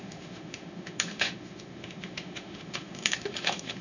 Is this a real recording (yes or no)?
no